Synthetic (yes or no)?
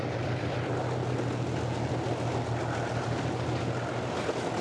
no